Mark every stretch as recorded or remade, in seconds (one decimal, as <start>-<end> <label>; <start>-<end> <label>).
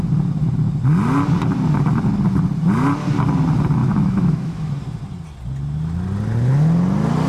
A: 0.0-3.8 recorded; 3.8-4.7 remade; 4.7-7.3 recorded